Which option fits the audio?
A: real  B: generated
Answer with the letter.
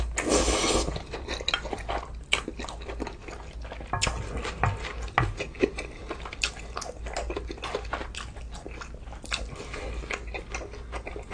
A